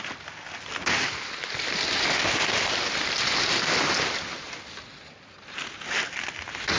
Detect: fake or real real